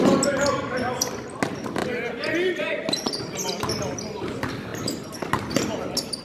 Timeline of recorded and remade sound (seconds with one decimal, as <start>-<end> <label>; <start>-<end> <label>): 0.0-6.2 recorded